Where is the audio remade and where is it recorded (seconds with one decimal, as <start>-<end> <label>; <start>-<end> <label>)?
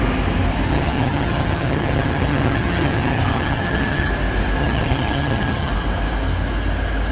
0.0-0.7 recorded; 0.7-4.1 remade; 4.1-4.6 recorded; 4.6-5.7 remade; 5.7-7.1 recorded